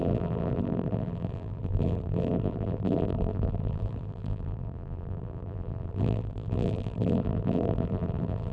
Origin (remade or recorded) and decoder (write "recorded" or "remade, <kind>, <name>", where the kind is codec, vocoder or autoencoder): remade, vocoder, BigVGAN v2